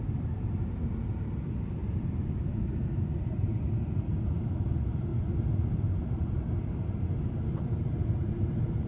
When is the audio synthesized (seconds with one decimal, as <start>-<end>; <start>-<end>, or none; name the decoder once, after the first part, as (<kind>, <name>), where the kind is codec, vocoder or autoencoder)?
0.0-5.1 (vocoder, BigVGAN v2); 5.7-8.9